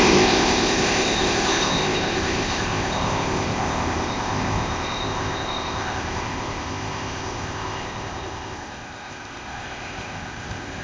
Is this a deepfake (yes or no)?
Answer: yes